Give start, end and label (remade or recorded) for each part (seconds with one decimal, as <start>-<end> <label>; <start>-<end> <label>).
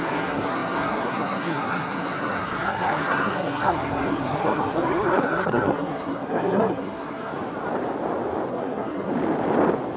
0.0-7.3 remade; 7.3-8.5 recorded; 8.5-9.1 remade; 9.1-10.0 recorded